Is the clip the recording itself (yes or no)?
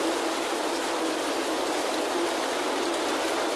yes